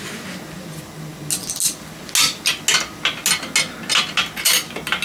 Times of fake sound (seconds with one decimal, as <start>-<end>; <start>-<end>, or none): none